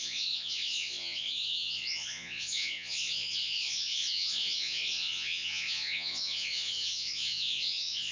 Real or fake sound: fake